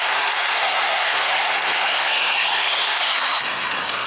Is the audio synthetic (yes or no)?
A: yes